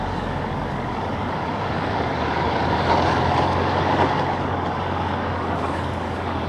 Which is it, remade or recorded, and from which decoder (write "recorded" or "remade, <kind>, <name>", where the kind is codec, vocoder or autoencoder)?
remade, codec, DAC